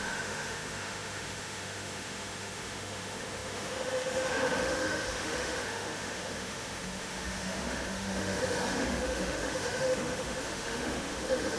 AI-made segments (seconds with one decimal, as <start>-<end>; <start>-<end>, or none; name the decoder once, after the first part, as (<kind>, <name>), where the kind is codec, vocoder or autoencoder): 0.0-11.6 (autoencoder, DAC-VAE)